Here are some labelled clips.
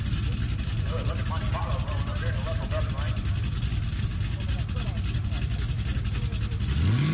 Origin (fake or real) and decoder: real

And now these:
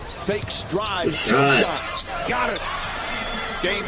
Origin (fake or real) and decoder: fake, vocoder, BigVGAN v2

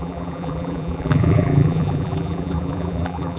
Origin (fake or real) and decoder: fake, vocoder, BigVGAN v2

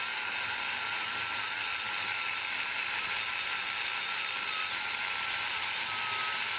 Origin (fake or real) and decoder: real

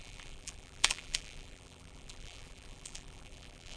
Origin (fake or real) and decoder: fake, vocoder, BigVGAN v2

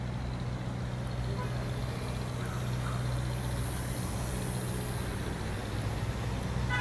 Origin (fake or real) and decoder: real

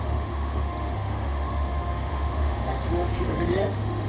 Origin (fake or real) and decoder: fake, autoencoder, DAC-VAE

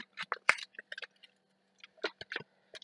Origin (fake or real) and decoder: real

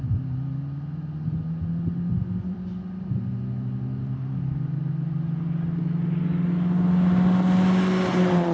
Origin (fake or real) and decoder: real